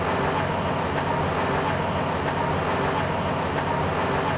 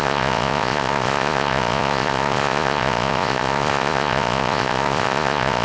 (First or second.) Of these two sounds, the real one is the first